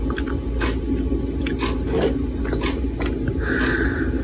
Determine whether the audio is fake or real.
real